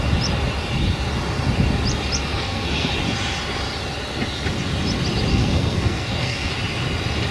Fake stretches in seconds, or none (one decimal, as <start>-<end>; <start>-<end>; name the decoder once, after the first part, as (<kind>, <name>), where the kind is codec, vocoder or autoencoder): 2.3-2.9 (codec, SNAC); 5.3-6.5